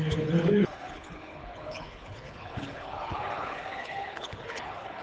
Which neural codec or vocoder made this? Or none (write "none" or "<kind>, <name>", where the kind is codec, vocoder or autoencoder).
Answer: codec, HILCodec